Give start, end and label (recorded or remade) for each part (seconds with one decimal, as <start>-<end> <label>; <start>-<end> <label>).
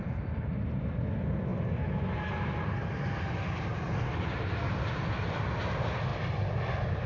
0.0-7.1 recorded